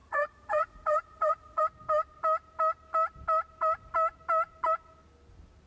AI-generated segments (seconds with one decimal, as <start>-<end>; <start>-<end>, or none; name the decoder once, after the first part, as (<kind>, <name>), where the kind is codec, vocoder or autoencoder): 0.0-1.6 (vocoder, Vocos)